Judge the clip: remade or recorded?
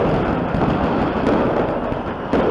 recorded